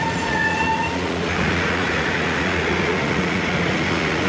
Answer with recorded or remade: remade